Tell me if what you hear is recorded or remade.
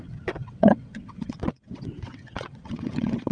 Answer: remade